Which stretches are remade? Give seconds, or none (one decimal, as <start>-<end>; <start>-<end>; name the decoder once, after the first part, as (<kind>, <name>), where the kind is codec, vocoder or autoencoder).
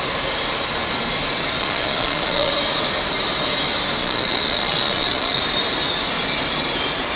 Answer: 1.6-2.5 (vocoder, Vocos); 4.0-5.4